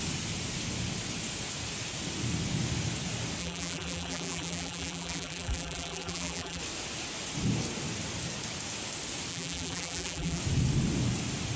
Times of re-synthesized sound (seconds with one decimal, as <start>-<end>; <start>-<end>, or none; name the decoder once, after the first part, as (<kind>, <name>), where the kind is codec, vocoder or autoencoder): 3.4-6.6 (vocoder, BigVGAN v2); 9.3-10.4